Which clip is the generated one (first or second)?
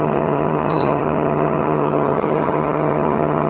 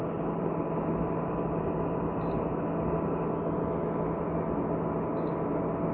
first